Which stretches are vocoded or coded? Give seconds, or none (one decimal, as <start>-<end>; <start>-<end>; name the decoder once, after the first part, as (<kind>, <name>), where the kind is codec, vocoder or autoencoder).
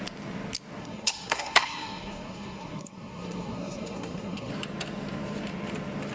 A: 0.8-4.5 (codec, SNAC)